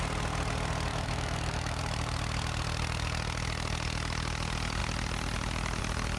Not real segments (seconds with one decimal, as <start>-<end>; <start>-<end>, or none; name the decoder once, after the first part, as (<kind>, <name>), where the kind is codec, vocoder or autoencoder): 0.9-1.8 (autoencoder, DAC-VAE)